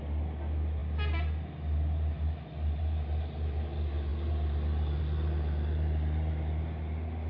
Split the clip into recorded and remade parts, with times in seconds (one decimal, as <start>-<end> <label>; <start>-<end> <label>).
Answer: 0.0-7.3 recorded